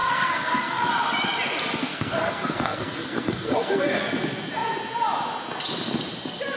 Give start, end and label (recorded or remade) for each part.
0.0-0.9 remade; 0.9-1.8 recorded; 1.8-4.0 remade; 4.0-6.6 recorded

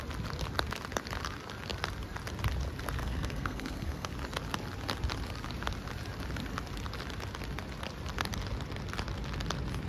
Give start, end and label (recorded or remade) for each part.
0.0-3.0 recorded; 3.0-4.1 remade; 4.1-9.9 recorded

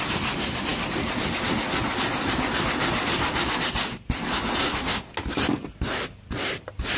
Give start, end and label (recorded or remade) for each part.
0.0-4.6 recorded; 4.6-5.1 remade; 5.1-7.0 recorded